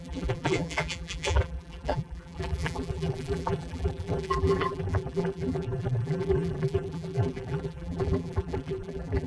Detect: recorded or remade remade